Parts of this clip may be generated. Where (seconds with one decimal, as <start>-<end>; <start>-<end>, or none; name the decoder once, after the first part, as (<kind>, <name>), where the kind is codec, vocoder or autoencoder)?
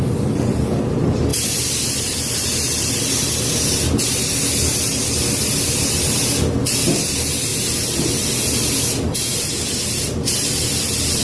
none